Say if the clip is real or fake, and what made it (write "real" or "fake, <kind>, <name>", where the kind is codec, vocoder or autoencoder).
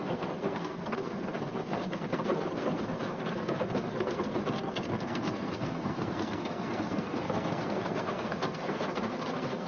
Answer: fake, codec, SNAC